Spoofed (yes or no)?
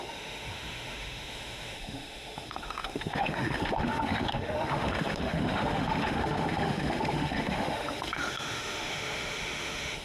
yes